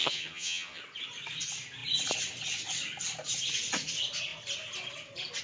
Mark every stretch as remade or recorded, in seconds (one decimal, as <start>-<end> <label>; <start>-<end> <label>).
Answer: 0.0-0.8 remade; 0.8-5.4 recorded